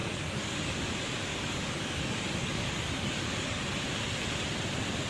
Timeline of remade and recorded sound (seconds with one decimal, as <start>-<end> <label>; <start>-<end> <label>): 0.0-0.7 remade; 0.7-1.3 recorded; 1.3-3.7 remade; 3.7-5.1 recorded